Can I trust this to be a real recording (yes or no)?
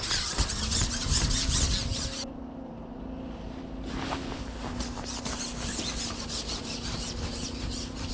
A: yes